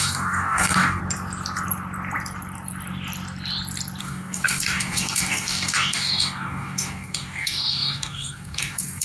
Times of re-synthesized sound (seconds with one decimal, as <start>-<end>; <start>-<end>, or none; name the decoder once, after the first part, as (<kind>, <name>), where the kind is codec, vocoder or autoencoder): 0.0-1.0 (codec, DAC); 4.0-9.0

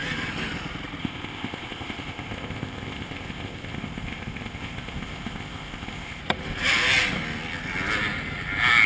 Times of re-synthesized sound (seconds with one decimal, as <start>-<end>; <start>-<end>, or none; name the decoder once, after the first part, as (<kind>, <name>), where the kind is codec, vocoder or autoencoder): 1.0-6.2 (codec, ZipCodec)